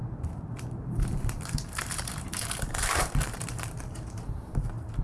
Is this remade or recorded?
remade